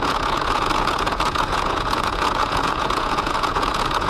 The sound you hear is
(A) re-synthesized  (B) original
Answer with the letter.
A